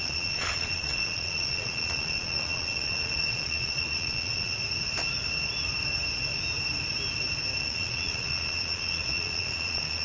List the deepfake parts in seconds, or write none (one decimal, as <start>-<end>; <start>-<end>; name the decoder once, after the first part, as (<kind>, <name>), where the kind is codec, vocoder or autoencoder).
0.0-4.6 (vocoder, Vocos); 7.6-10.0